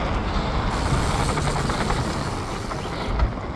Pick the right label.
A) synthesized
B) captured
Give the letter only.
B